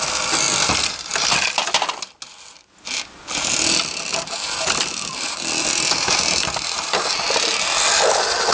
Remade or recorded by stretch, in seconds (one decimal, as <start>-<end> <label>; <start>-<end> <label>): 0.0-8.5 recorded